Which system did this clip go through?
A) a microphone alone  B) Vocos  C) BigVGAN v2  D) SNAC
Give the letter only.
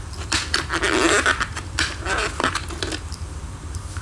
C